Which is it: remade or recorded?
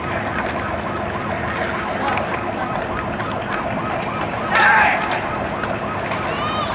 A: recorded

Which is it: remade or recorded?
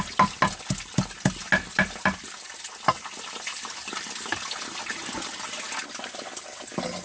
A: recorded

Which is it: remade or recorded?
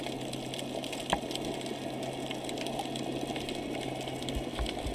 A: recorded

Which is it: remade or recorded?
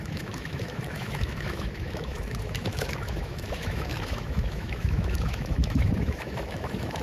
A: remade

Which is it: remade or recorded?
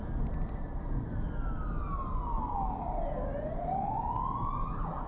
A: recorded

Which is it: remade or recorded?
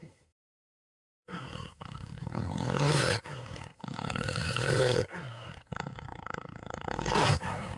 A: remade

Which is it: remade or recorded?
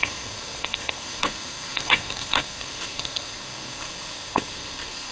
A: remade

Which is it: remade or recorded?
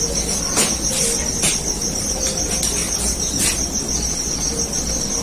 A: recorded